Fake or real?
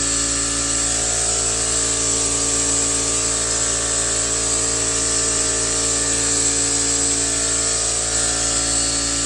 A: real